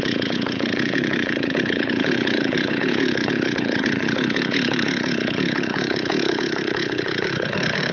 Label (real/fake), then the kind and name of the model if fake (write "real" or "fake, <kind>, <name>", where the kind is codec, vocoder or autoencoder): fake, codec, HILCodec